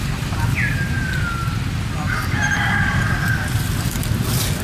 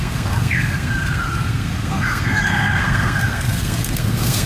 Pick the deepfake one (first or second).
second